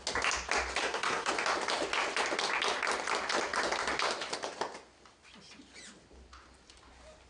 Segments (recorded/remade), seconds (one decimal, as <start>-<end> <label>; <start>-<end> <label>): 0.0-0.8 recorded; 0.8-1.3 remade; 1.3-7.3 recorded